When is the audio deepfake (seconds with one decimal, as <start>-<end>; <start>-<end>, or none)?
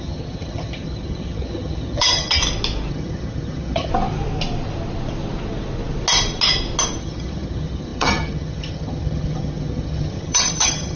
0.0-2.4; 2.9-3.9; 7.0-11.0